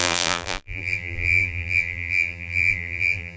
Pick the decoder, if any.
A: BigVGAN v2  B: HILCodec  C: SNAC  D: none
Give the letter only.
A